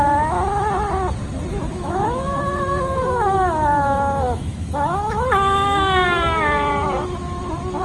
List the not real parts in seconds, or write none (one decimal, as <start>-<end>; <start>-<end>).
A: 1.7-5.3